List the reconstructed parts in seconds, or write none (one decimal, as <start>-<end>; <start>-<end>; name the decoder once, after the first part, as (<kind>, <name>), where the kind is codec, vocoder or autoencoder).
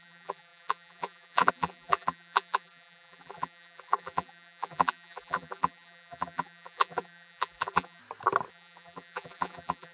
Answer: 0.0-8.0 (vocoder, BigVGAN v2); 8.5-9.9